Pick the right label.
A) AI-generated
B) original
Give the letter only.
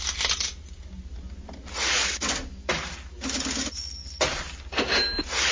B